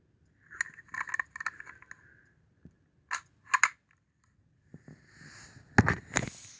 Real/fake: real